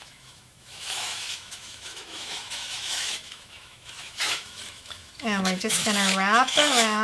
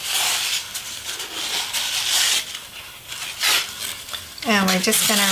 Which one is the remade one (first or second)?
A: first